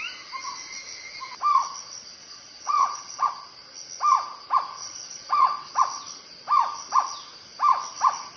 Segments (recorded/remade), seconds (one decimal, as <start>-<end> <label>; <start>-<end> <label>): 0.0-2.2 recorded; 2.2-3.3 remade; 3.3-4.8 recorded; 4.8-5.7 remade; 5.7-8.4 recorded